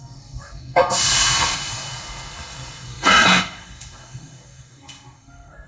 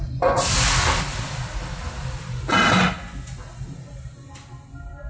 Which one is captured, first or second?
second